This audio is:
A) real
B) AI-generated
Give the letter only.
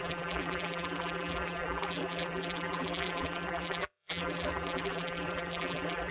B